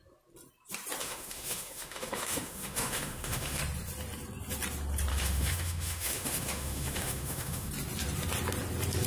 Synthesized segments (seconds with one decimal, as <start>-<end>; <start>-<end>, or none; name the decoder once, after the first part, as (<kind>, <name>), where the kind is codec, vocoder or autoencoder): 1.0-3.6 (autoencoder, DAC-VAE); 5.1-7.7